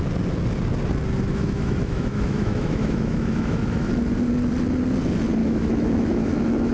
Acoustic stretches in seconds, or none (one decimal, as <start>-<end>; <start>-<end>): 0.0-1.3; 3.9-5.4